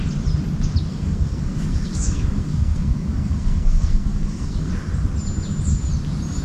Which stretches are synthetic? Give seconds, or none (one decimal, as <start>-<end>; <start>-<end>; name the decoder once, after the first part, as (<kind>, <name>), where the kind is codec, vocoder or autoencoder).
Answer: 0.9-4.7 (codec, SNAC)